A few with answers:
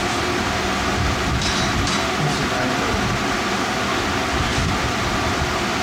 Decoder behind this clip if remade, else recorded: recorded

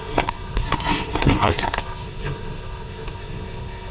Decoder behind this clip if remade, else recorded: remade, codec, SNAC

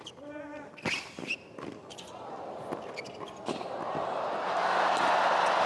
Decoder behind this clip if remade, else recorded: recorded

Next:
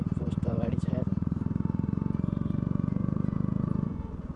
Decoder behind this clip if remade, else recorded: remade, vocoder, Vocos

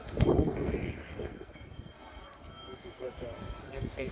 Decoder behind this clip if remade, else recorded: remade, codec, SNAC